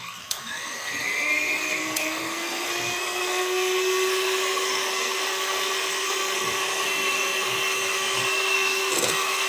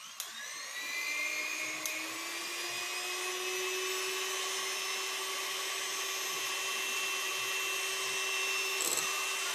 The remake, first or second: first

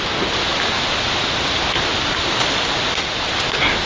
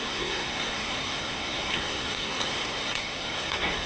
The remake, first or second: second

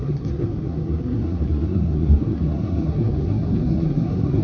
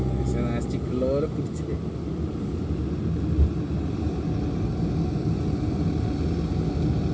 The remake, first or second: first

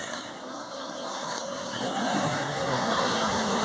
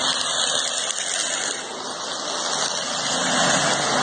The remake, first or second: first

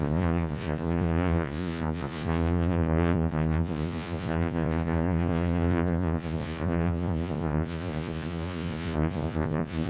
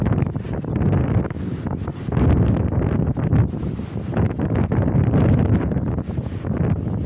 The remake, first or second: first